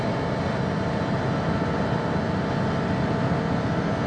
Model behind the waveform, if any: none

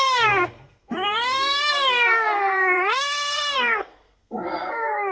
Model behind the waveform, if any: codec, SNAC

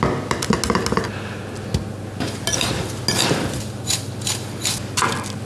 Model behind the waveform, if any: none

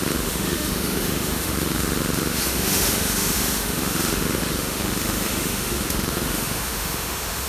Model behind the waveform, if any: autoencoder, DAC-VAE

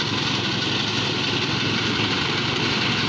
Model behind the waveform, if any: none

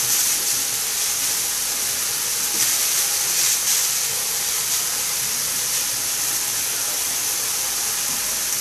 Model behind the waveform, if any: none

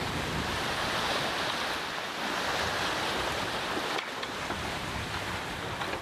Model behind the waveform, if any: none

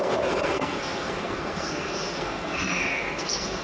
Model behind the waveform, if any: codec, SNAC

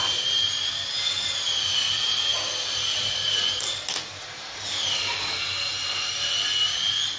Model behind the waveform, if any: none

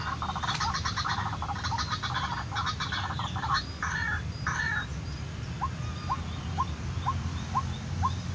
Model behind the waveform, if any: none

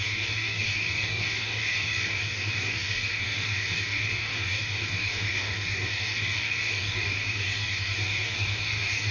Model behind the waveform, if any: codec, DAC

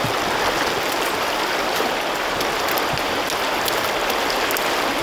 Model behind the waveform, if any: none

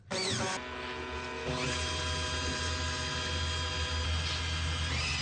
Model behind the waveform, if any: none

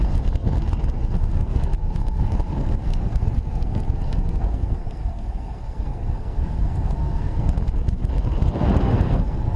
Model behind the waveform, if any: codec, SNAC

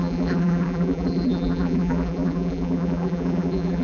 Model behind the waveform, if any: vocoder, BigVGAN v2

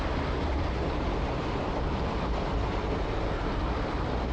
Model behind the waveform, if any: none